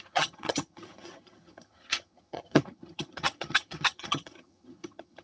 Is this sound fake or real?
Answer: fake